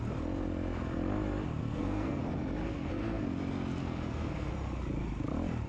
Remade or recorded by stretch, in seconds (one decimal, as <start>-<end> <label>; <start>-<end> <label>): 0.0-1.6 recorded; 1.6-2.2 remade; 2.2-2.6 recorded; 2.6-3.2 remade; 3.2-3.8 recorded; 3.8-4.5 remade; 4.5-5.7 recorded